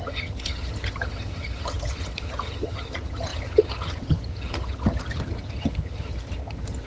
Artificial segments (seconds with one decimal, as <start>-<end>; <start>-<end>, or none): 0.0-6.9